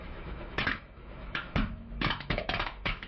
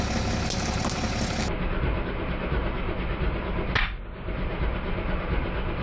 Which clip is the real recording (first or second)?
second